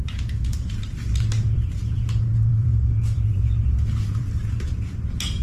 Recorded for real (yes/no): no